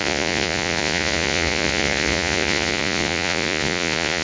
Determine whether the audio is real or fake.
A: fake